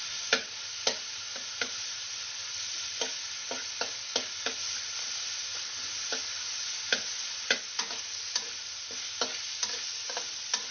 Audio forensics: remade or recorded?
recorded